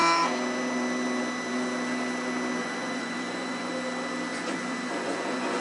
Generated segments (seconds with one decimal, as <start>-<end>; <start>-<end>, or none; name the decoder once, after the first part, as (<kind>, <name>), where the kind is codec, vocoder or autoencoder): 2.6-3.7 (vocoder, Vocos); 4.3-5.6